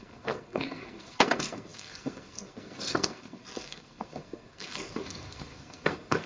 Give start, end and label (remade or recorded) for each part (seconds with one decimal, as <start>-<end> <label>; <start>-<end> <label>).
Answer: 0.0-6.3 remade